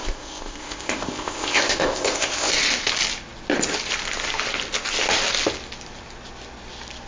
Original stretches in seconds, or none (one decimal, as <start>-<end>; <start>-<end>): 2.5-7.1